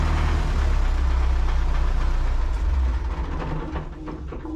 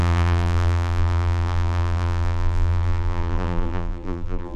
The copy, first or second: second